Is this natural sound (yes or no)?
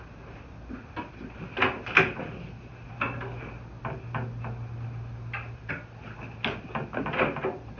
yes